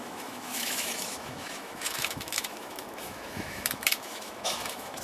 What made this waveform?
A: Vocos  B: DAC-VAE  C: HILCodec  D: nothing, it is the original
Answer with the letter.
B